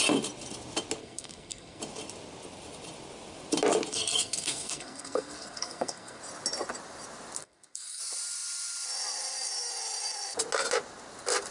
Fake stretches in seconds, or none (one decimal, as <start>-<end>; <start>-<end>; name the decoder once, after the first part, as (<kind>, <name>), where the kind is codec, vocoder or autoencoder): 1.0-1.8 (codec, SNAC); 3.9-6.2; 7.4-8.0